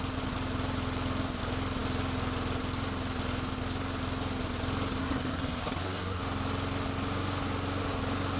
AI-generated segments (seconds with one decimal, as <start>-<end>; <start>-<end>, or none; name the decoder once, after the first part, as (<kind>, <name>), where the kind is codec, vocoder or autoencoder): 5.0-6.2 (codec, SNAC)